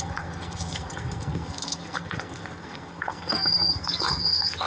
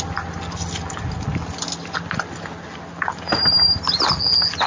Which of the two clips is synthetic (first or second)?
first